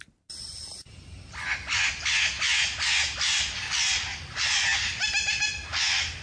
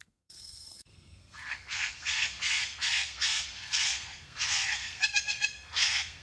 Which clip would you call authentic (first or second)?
first